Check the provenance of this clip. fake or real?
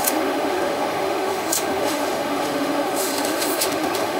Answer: fake